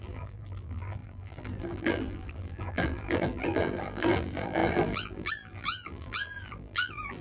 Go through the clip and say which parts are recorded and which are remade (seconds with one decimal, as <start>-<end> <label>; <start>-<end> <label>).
0.0-7.2 remade